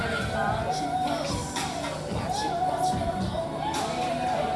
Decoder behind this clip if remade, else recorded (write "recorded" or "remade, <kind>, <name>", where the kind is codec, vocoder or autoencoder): recorded